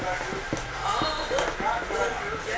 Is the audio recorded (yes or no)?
yes